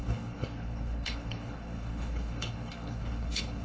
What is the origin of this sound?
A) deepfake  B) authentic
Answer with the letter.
A